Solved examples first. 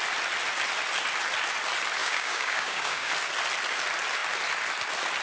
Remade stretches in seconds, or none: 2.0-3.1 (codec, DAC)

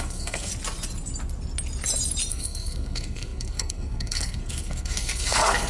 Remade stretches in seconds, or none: 0.0-0.5 (codec, SNAC); 2.3-5.7

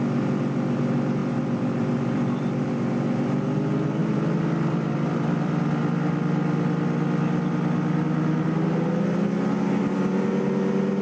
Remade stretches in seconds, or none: 1.2-2.7 (vocoder, BigVGAN v2); 4.0-5.7